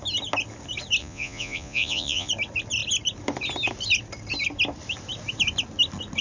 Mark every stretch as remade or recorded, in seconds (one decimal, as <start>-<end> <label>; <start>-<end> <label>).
0.0-1.0 recorded; 1.0-2.3 remade; 2.3-6.2 recorded